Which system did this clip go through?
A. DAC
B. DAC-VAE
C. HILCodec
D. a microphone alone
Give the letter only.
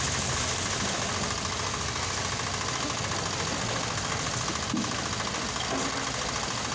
D